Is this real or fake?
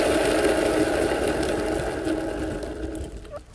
real